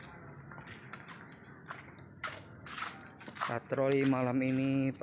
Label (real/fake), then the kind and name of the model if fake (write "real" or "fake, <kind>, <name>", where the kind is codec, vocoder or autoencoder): real